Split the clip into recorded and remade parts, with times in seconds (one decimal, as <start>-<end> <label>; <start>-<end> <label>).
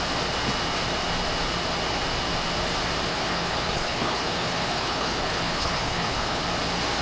0.0-3.1 recorded; 3.1-6.4 remade; 6.4-7.0 recorded